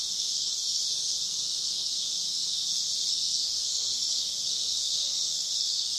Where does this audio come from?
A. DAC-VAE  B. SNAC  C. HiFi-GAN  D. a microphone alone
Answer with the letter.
B